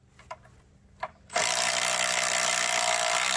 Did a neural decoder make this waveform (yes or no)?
no